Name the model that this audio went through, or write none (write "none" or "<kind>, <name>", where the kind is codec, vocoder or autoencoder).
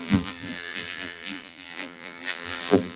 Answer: vocoder, BigVGAN v2